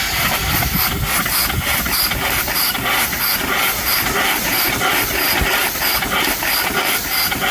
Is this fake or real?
real